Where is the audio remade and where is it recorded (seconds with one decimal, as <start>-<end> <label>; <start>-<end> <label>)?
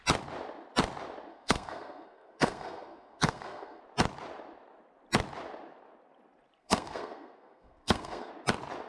0.0-1.3 recorded; 1.3-3.8 remade; 3.8-6.6 recorded; 6.6-8.3 remade; 8.3-8.9 recorded